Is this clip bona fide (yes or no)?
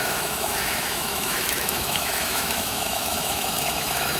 no